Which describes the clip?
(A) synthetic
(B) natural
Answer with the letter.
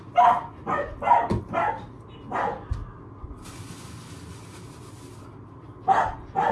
B